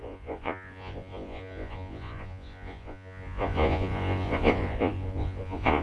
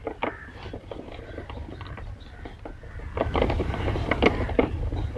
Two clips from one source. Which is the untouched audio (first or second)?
second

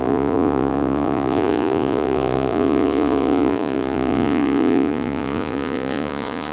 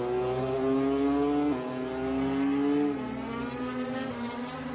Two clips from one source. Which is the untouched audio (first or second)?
second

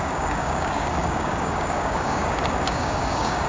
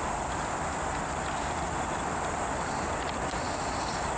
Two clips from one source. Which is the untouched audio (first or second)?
second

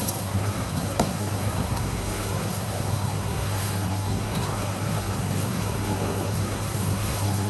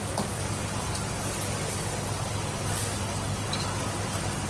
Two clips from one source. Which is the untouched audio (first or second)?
second